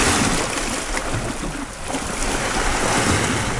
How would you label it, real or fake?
real